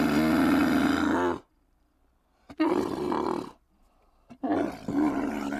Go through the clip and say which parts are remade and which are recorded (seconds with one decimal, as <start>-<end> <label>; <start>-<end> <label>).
0.0-0.6 recorded; 0.6-4.0 remade; 4.0-5.6 recorded